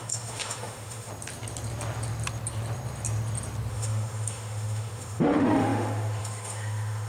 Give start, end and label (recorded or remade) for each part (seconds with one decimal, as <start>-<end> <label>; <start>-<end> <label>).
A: 0.0-1.1 remade; 1.1-3.7 recorded; 3.7-7.1 remade